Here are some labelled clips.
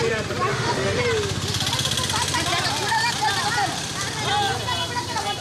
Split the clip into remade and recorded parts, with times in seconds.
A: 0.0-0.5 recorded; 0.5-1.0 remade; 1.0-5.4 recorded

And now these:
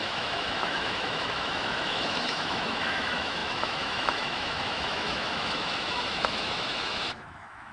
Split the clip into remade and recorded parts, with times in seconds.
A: 0.0-7.7 remade